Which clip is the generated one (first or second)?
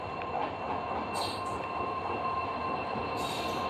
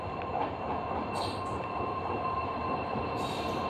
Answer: second